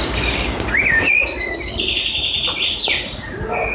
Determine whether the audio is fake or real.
fake